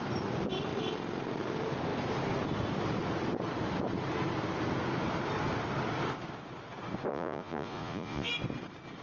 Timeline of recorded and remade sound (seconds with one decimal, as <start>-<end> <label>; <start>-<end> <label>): 0.0-7.1 recorded; 7.1-8.3 remade; 8.3-9.0 recorded